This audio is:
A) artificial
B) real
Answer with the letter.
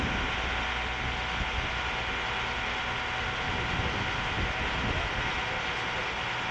B